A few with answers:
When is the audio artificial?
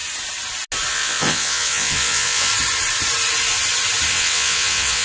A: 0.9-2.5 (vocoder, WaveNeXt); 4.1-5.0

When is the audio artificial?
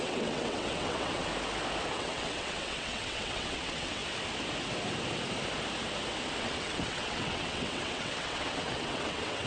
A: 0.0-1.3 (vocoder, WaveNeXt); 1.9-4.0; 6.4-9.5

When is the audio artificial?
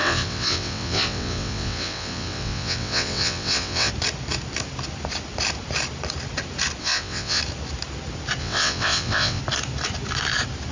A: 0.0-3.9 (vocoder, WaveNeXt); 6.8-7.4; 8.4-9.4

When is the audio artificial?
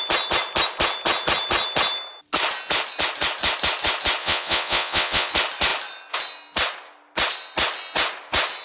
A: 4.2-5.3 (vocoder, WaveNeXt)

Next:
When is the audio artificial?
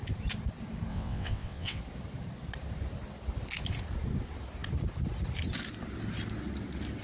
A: 0.9-1.8 (vocoder, WaveNeXt)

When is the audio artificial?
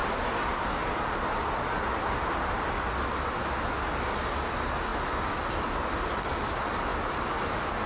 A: none